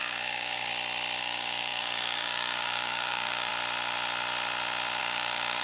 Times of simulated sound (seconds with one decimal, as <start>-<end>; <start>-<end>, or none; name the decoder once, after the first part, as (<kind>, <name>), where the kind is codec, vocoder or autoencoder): 0.0-0.7 (codec, DAC); 1.2-3.5; 5.0-5.6

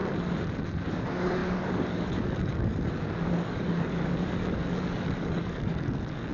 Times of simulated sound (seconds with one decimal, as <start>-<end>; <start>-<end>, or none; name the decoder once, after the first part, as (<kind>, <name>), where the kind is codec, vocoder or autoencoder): 0.9-6.3 (codec, DAC)

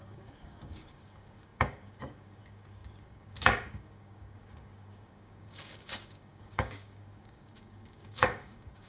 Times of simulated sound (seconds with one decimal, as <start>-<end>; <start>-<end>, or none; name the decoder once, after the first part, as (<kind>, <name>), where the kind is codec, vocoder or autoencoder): 0.0-8.9 (codec, DAC)

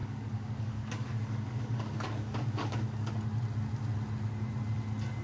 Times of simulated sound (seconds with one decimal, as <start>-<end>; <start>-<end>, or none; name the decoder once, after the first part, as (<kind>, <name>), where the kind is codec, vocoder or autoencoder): 0.0-3.1 (codec, DAC)

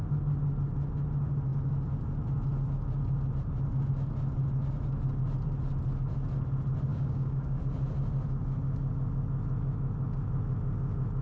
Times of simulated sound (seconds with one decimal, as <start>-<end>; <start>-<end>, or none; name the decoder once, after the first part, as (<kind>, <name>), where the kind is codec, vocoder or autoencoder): 6.9-7.6 (codec, DAC)

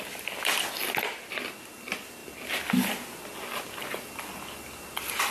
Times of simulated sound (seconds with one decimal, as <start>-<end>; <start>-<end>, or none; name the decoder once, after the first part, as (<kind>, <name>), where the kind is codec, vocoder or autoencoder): none

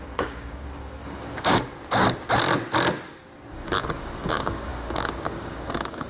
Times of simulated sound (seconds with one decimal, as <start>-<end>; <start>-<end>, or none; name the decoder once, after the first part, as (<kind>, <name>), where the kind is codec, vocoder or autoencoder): 0.0-1.7 (codec, DAC); 3.5-6.1